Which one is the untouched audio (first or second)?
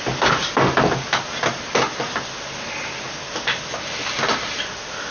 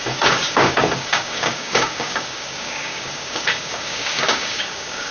first